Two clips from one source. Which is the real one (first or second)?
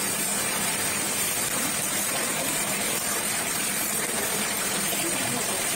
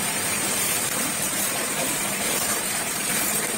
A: first